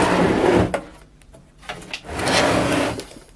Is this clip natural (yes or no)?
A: yes